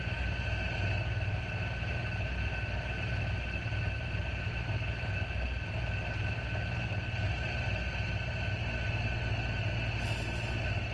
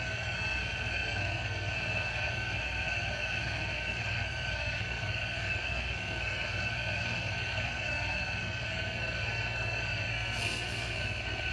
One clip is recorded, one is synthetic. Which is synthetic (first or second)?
second